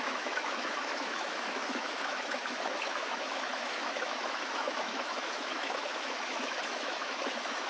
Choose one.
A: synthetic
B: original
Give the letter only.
A